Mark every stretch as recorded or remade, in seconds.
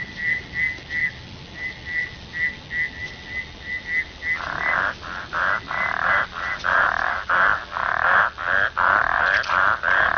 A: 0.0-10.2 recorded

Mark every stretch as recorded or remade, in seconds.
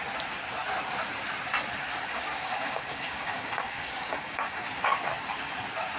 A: 0.0-1.9 recorded; 1.9-4.7 remade; 4.7-6.0 recorded